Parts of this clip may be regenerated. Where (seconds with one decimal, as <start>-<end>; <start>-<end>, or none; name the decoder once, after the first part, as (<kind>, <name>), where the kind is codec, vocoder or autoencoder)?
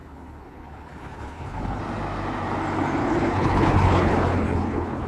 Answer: 0.0-1.8 (codec, HILCodec); 3.0-5.1